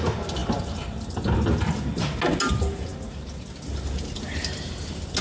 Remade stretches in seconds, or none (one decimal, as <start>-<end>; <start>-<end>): none

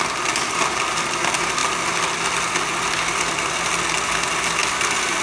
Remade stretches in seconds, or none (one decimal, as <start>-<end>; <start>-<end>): none

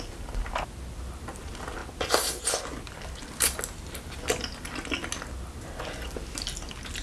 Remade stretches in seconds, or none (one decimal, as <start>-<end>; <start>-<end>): none

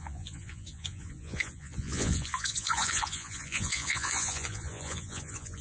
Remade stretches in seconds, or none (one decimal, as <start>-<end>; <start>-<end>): 0.0-5.6

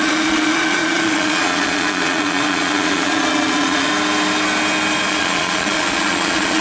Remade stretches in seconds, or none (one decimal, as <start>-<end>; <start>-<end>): 0.0-3.9; 5.1-6.6

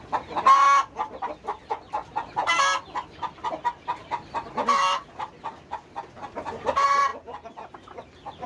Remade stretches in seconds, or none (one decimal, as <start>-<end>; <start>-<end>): none

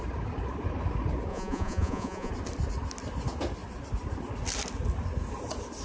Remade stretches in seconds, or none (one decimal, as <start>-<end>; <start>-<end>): 1.3-2.3

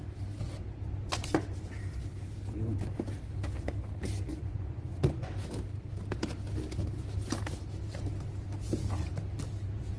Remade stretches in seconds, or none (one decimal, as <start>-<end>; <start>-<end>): 4.3-5.3